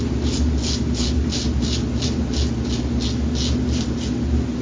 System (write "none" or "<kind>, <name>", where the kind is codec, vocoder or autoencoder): none